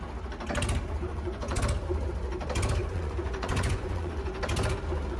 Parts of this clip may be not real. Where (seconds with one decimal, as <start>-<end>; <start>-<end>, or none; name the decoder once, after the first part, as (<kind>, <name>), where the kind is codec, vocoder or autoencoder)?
1.1-1.6 (vocoder, Vocos); 2.8-4.4